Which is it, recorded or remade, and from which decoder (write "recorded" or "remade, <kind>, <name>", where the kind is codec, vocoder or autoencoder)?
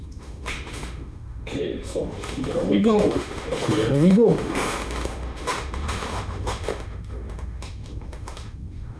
remade, autoencoder, DAC-VAE